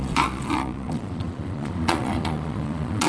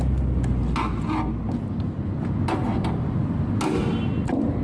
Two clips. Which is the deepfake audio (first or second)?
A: first